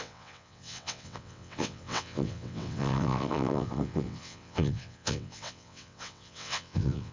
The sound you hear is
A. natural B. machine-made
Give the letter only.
B